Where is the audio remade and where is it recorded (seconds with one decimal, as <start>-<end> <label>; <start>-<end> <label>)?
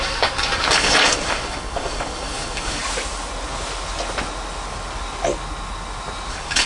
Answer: 0.0-2.8 remade; 2.8-6.3 recorded; 6.3-6.7 remade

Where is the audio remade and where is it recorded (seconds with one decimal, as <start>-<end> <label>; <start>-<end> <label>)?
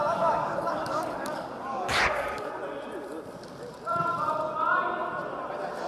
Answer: 0.0-2.5 remade; 2.5-5.9 recorded